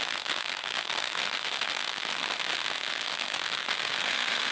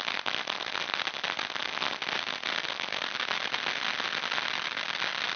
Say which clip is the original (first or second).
second